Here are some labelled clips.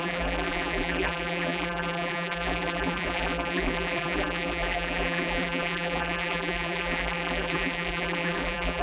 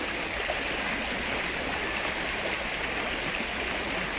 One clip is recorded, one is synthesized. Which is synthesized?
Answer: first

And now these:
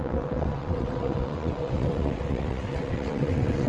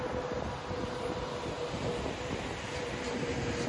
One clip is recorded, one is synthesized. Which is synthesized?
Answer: first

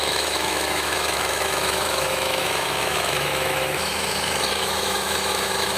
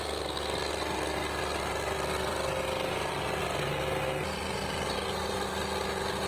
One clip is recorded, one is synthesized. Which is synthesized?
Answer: first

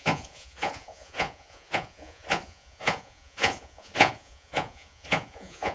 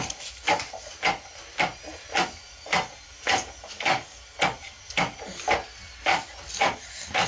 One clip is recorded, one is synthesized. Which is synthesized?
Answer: first